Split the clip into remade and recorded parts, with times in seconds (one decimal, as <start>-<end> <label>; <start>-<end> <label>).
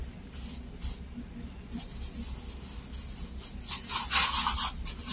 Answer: 0.0-5.1 recorded